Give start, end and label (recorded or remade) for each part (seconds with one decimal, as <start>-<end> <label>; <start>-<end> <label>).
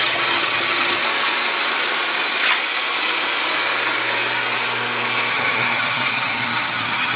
0.0-1.0 remade; 1.0-5.3 recorded; 5.3-7.2 remade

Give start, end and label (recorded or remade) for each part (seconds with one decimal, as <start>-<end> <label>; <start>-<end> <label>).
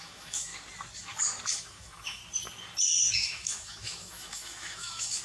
0.0-0.5 remade; 0.5-1.5 recorded; 1.5-2.2 remade; 2.2-3.1 recorded; 3.1-5.2 remade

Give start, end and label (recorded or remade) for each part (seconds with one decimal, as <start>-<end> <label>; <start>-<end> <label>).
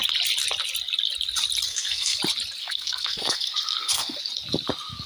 0.0-1.7 recorded; 1.7-2.2 remade; 2.2-2.6 recorded; 2.6-4.2 remade; 4.2-5.1 recorded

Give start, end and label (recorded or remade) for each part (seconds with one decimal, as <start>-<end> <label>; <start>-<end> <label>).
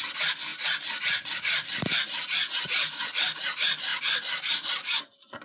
0.0-5.4 recorded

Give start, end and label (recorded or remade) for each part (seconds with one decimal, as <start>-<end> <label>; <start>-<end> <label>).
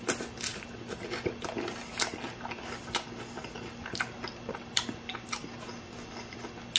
0.0-6.8 recorded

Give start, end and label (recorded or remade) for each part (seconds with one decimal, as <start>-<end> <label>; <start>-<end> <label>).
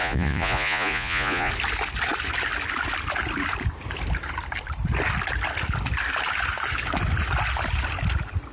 0.0-1.5 remade; 1.5-8.5 recorded